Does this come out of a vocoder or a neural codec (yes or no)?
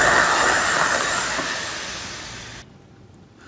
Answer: no